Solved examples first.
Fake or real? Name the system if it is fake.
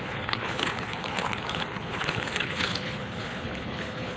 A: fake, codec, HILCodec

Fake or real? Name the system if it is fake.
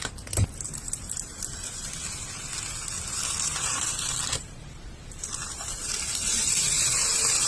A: real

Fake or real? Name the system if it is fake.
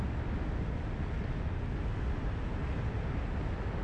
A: real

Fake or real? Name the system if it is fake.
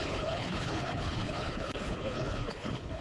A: fake, codec, HILCodec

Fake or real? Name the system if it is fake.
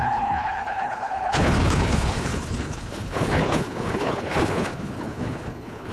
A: fake, codec, HILCodec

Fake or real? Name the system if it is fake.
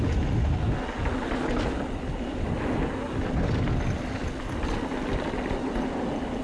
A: real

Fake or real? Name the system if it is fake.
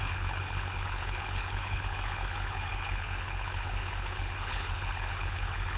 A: fake, codec, HILCodec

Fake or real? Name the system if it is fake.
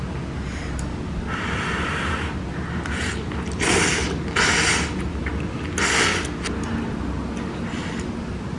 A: real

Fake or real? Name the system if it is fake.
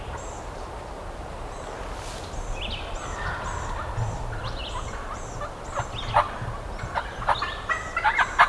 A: real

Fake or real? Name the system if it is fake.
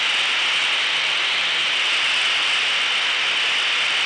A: real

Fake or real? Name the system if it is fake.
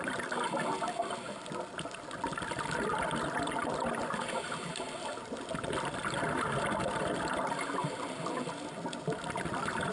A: real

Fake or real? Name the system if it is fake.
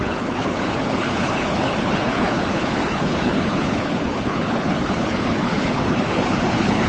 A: fake, codec, HILCodec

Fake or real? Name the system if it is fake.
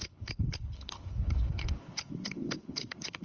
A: fake, codec, HILCodec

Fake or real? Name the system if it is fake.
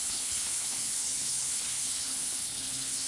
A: fake, codec, HILCodec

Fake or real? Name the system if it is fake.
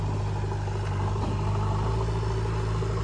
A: real